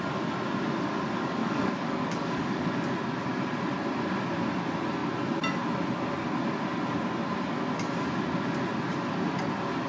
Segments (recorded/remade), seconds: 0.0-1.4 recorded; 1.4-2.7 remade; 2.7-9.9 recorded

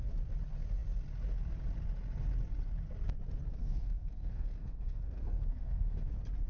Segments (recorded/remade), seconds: 0.0-3.6 recorded; 3.6-6.1 remade; 6.1-6.5 recorded

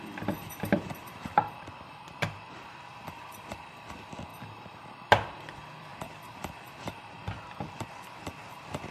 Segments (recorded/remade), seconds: 0.0-4.3 remade; 4.3-5.1 recorded; 5.1-8.9 remade

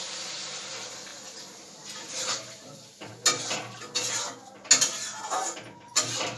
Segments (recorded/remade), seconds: 0.0-1.1 recorded; 1.1-3.1 remade; 3.1-6.4 recorded